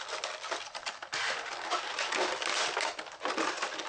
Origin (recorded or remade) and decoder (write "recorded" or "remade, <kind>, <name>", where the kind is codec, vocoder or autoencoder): recorded